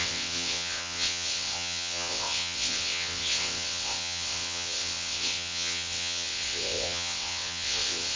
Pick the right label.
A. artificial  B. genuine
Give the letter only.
A